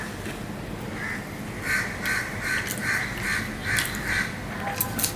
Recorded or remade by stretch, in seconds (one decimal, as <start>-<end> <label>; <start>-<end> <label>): 0.0-3.6 recorded; 3.6-4.3 remade; 4.3-5.2 recorded